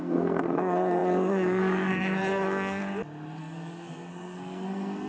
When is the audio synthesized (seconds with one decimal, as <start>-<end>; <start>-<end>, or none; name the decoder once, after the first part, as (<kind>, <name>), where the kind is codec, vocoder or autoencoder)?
0.0-2.8 (codec, SNAC); 3.4-5.1